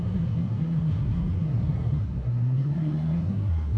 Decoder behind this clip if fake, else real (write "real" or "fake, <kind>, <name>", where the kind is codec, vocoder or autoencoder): fake, codec, SNAC